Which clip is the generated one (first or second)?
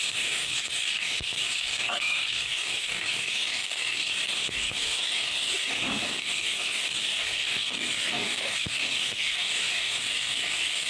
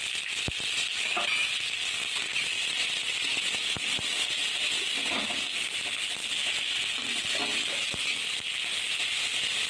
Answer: first